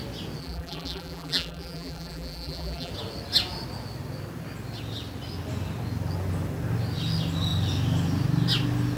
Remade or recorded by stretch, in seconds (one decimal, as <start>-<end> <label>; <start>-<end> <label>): 0.0-0.4 recorded; 0.4-2.9 remade; 2.9-9.0 recorded